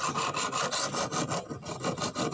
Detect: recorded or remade recorded